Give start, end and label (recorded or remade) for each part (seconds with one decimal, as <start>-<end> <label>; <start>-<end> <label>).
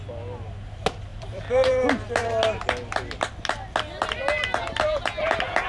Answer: 0.0-1.1 recorded; 1.1-1.7 remade; 1.7-5.7 recorded